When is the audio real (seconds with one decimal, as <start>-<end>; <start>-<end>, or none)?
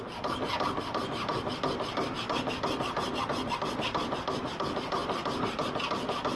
0.0-6.4